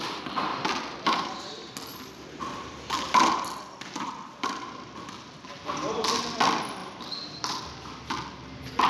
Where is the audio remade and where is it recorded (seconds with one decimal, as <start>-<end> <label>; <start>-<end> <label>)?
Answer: 0.0-0.5 recorded; 0.5-1.4 remade; 1.4-1.9 recorded; 1.9-3.3 remade; 3.3-6.8 recorded; 6.8-7.6 remade; 7.6-8.9 recorded